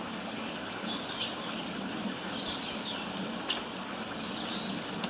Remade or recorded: recorded